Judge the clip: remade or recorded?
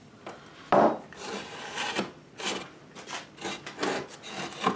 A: recorded